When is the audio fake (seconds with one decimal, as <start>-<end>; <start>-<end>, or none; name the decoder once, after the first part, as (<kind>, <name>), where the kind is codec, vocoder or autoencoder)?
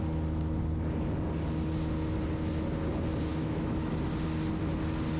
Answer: 3.3-3.9 (autoencoder, DAC-VAE)